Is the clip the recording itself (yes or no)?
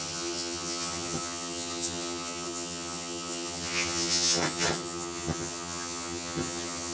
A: no